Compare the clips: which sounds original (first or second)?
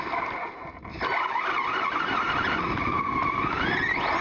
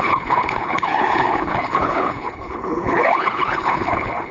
first